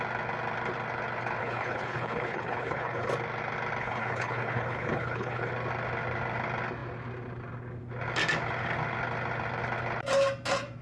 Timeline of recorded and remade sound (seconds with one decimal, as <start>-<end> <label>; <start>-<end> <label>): 0.0-1.4 recorded; 1.4-3.1 remade; 3.1-3.8 recorded; 3.8-5.5 remade; 5.5-10.8 recorded